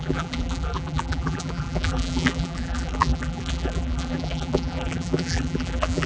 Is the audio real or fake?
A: fake